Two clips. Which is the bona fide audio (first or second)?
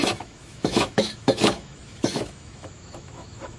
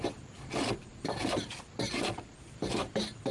second